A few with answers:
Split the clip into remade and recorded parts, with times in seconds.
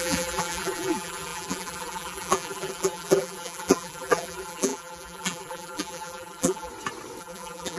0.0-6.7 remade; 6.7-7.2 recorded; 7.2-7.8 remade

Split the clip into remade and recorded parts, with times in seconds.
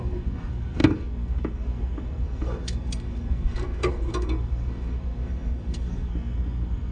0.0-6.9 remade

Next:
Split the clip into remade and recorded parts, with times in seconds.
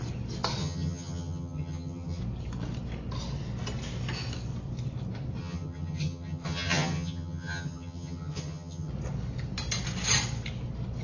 0.0-0.6 recorded; 0.6-2.2 remade; 2.2-5.4 recorded; 5.4-8.9 remade; 8.9-11.0 recorded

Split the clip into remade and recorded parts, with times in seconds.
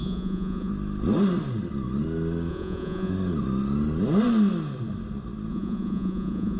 0.0-0.7 remade; 0.7-2.5 recorded; 2.5-3.1 remade; 3.1-5.5 recorded; 5.5-6.6 remade